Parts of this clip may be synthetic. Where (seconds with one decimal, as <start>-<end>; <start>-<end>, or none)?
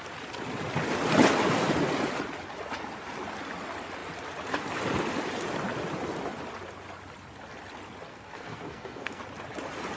8.1-9.2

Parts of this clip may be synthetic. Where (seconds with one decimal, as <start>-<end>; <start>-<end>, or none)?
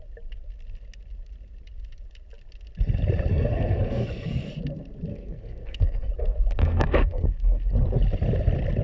3.3-4.5; 5.1-6.1; 6.6-7.7